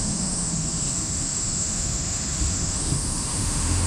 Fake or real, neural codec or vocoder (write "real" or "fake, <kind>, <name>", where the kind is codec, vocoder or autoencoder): fake, autoencoder, DAC-VAE